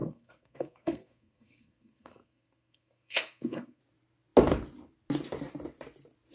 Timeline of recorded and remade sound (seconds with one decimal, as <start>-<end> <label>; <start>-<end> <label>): 0.0-3.8 remade; 3.8-6.3 recorded